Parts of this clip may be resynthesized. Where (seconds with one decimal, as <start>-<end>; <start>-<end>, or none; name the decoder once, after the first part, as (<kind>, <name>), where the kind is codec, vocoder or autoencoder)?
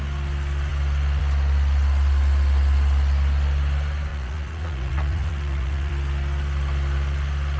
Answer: 4.1-5.9 (vocoder, Vocos)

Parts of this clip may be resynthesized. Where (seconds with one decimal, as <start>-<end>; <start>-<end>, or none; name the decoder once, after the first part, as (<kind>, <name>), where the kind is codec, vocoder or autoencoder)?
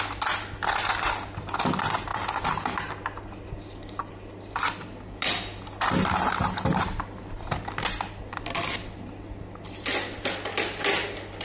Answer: none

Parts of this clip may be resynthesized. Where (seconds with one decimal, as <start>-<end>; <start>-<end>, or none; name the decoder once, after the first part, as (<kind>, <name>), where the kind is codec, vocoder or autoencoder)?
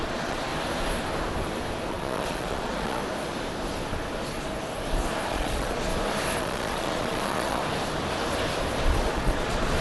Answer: 0.0-0.5 (vocoder, Vocos); 1.9-3.0; 5.3-5.9; 6.4-7.6; 8.9-9.8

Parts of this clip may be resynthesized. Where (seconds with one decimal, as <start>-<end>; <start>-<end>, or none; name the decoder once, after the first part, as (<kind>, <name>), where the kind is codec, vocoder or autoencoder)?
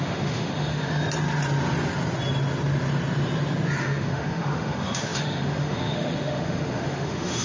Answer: 0.0-1.0 (autoencoder, DAC-VAE); 3.8-7.4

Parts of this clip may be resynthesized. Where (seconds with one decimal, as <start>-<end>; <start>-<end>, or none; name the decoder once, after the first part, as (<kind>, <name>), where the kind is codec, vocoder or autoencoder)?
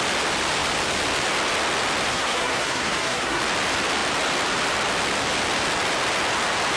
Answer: 2.1-3.4 (codec, SNAC)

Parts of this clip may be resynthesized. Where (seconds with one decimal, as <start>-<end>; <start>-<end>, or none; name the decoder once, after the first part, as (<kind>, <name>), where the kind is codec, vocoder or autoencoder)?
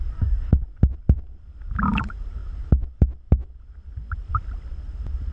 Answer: none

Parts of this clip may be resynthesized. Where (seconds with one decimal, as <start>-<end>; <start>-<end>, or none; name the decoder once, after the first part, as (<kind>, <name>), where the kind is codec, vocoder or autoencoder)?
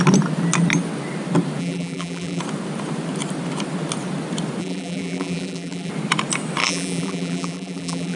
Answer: 1.6-2.4 (vocoder, BigVGAN v2); 4.6-5.9; 6.6-8.2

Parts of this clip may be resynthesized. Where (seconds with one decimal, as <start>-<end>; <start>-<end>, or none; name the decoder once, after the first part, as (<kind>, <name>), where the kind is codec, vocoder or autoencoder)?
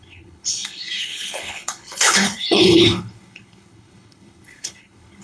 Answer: 0.0-5.2 (codec, HILCodec)